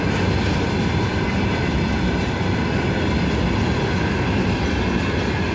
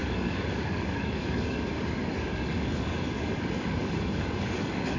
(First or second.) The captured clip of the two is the first